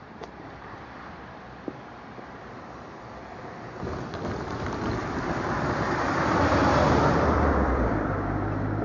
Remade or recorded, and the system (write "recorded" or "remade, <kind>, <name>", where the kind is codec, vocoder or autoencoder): remade, vocoder, BigVGAN v2